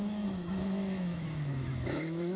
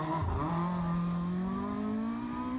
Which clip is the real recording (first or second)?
second